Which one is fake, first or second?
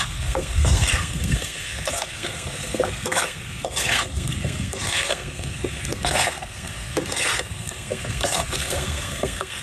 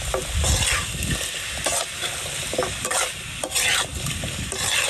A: first